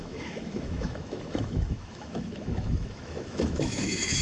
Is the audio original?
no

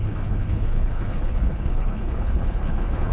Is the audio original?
no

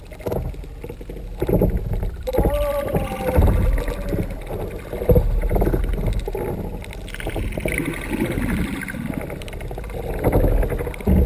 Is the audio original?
yes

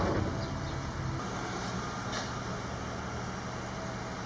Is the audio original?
yes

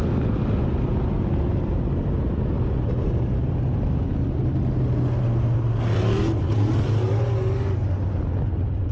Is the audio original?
yes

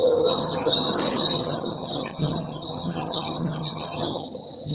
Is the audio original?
no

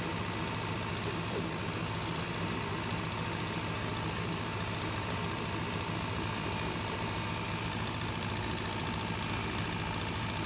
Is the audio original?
yes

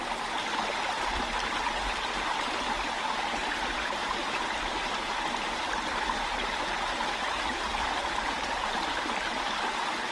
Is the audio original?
yes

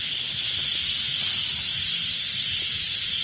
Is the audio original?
yes